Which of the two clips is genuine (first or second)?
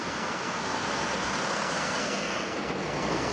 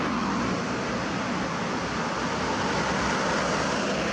second